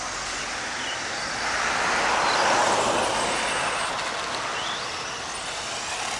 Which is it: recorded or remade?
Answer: recorded